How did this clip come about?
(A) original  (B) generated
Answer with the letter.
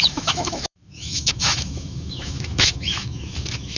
B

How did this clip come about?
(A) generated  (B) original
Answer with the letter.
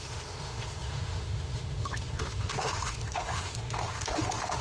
A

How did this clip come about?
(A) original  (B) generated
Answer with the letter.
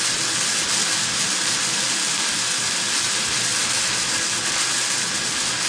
A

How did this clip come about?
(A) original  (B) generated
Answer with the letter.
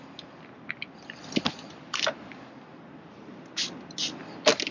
A